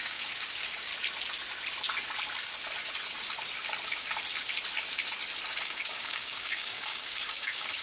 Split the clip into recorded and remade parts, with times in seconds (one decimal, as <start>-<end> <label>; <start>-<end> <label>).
0.0-0.9 remade; 0.9-5.6 recorded; 5.6-7.8 remade